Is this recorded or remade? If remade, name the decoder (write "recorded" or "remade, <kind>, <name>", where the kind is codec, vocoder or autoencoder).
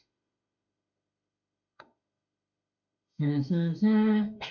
remade, autoencoder, DAC-VAE